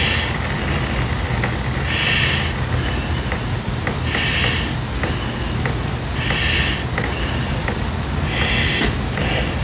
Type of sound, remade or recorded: recorded